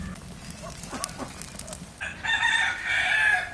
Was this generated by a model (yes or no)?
no